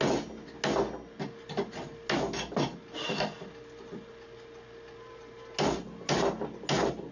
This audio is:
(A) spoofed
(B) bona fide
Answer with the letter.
B